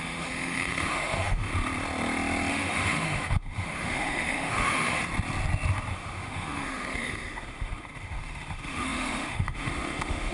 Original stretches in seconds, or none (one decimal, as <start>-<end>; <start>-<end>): 1.5-2.5; 5.0-5.9